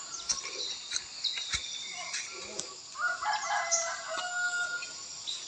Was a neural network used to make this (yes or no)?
no